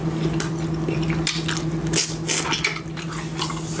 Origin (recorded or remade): recorded